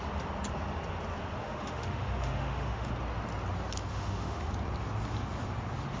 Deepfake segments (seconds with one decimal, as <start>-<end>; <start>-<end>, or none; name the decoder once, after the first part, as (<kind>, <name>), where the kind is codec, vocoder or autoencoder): 1.4-2.9 (autoencoder, DAC-VAE); 3.9-4.5